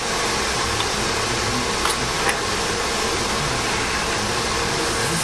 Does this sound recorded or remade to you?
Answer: recorded